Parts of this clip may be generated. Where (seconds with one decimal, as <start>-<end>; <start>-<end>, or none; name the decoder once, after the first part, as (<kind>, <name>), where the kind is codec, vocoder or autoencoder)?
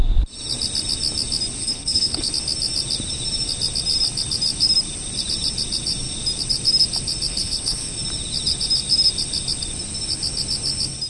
1.6-2.3 (codec, HILCodec); 7.3-7.9